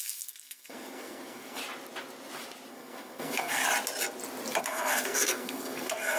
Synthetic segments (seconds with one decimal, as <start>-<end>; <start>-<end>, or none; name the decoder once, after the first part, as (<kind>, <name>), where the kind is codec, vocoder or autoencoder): 0.0-1.6 (codec, SNAC); 2.7-3.6; 4.6-6.2